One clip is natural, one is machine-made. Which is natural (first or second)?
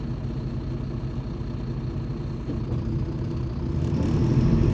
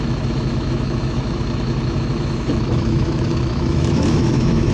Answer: first